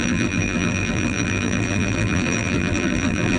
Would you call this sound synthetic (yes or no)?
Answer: yes